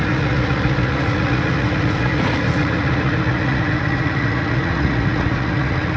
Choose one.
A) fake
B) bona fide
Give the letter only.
A